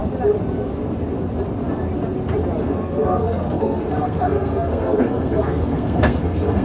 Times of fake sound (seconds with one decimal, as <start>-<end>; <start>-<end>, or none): 2.6-6.6